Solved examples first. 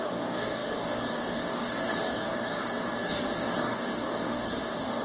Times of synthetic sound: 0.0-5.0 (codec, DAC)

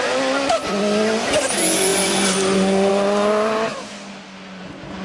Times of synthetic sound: none

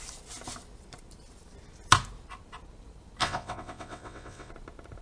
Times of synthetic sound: 3.2-4.5 (vocoder, WaveNeXt)

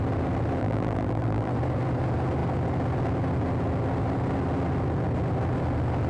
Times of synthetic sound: 0.6-1.5 (vocoder, BigVGAN v2)

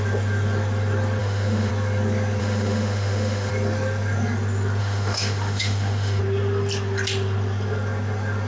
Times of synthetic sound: 1.2-1.7 (autoencoder, DAC-VAE); 2.4-3.5; 4.8-6.2